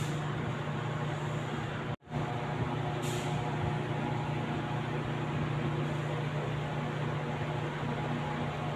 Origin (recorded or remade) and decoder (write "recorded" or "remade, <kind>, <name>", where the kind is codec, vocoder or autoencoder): recorded